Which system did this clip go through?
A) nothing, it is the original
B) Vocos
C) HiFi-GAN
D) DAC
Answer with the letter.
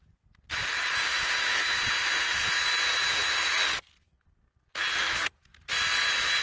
A